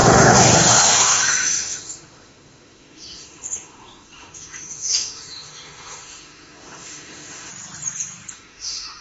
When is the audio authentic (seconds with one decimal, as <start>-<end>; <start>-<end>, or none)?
7.5-8.3